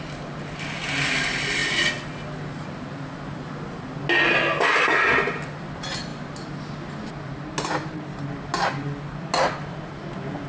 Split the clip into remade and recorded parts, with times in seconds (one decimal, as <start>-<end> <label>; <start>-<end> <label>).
0.0-10.5 recorded